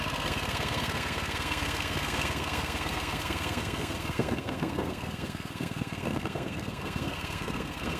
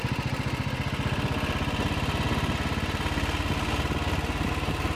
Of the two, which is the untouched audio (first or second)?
second